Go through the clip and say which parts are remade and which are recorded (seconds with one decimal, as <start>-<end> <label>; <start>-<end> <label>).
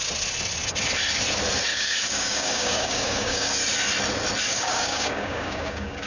0.0-1.7 recorded; 1.7-3.5 remade; 3.5-4.5 recorded; 4.5-6.1 remade